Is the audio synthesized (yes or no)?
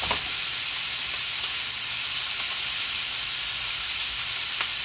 no